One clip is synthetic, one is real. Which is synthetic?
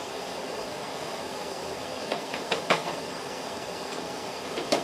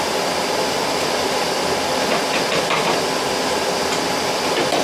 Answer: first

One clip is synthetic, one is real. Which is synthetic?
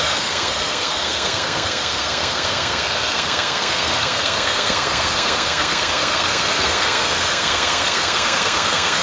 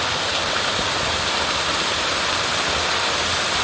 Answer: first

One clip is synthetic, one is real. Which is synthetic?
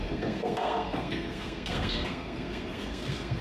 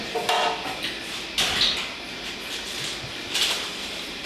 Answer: first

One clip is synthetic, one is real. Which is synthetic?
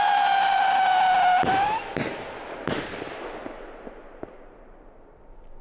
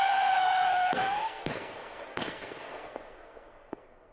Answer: second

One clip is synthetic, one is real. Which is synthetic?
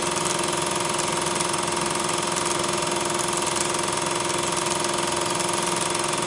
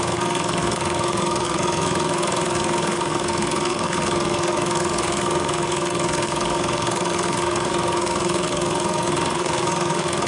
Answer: second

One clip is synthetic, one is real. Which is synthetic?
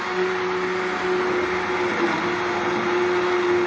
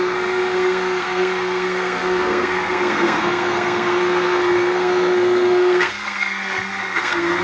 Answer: second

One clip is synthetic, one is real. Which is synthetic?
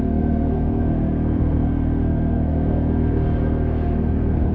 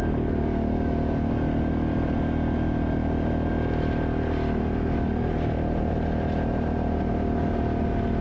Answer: first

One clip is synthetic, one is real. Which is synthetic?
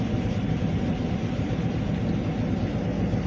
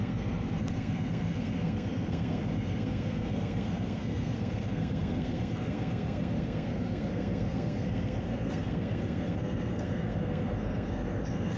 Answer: second